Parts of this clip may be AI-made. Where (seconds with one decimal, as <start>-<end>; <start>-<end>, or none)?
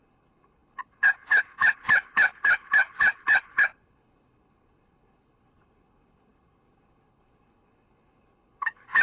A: 0.0-9.0